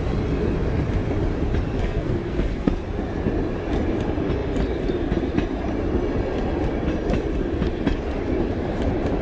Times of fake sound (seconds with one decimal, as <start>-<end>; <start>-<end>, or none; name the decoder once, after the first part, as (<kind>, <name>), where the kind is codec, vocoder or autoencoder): 1.8-2.7 (codec, SNAC)